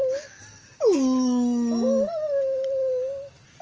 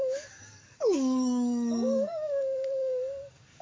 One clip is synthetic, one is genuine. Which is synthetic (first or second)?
second